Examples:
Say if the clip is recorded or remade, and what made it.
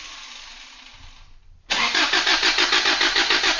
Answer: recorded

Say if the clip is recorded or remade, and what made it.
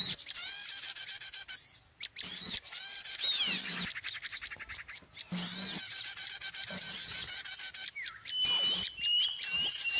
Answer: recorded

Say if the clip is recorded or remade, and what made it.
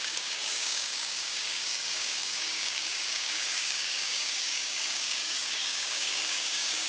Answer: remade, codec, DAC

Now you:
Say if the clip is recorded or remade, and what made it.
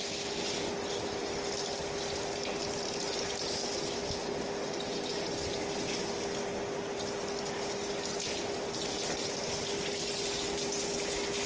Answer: recorded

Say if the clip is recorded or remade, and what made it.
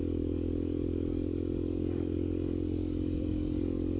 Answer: remade, codec, DAC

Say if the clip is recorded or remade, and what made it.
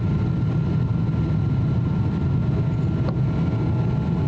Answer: recorded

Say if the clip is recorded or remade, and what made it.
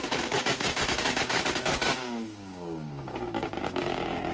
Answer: remade, codec, DAC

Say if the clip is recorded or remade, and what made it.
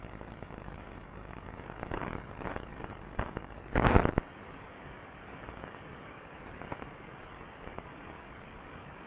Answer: remade, codec, DAC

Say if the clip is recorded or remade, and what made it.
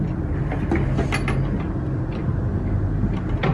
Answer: recorded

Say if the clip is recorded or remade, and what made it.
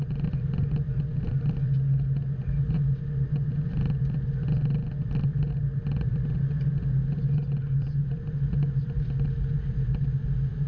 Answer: recorded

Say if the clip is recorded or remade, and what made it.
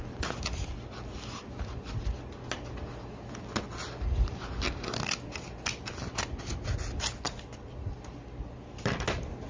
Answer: recorded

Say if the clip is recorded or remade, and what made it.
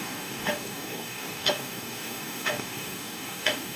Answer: remade, codec, DAC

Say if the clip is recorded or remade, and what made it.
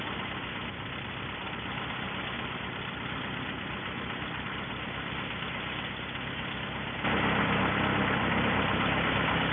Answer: recorded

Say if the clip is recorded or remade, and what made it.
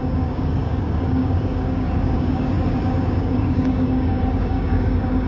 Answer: remade, codec, DAC